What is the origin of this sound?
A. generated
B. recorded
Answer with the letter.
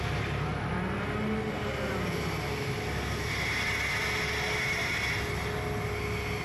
B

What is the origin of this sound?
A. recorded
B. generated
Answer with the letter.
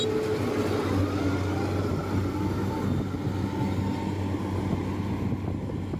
A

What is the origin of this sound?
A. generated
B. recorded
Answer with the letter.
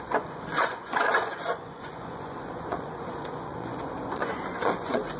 A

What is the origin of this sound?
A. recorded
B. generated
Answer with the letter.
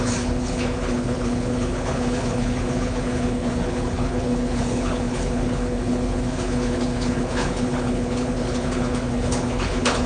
B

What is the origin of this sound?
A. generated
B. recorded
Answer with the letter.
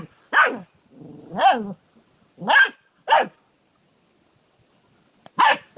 B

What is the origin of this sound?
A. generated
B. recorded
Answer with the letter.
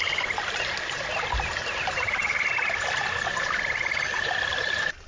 B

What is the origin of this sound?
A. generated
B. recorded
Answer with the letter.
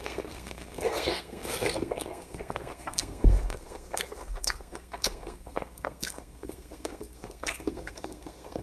A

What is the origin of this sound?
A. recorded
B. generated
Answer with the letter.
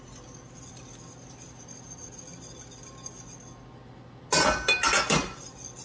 A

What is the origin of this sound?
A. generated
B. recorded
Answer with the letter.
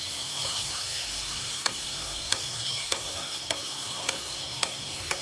A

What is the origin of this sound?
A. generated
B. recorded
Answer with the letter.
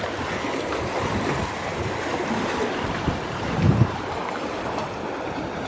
B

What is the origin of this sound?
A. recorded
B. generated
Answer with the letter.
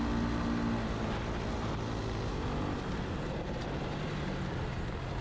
A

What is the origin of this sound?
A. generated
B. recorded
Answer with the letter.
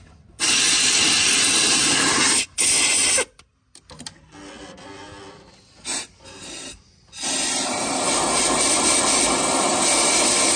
B